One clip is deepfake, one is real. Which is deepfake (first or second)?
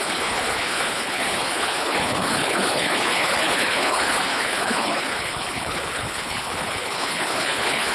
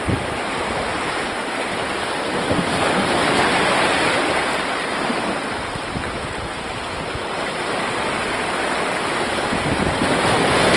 first